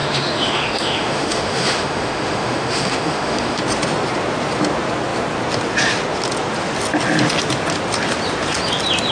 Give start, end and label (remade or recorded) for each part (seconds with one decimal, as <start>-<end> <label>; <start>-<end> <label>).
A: 0.0-3.6 remade; 3.6-9.1 recorded